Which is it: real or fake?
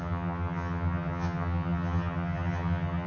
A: fake